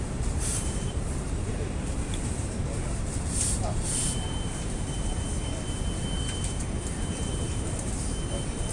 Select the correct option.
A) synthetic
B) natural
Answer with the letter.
A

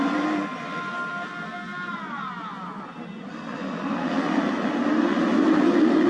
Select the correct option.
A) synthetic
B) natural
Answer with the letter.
B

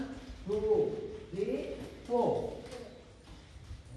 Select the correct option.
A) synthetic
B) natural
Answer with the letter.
B